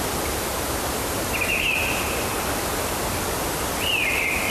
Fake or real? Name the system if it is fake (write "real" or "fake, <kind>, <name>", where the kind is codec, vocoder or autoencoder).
real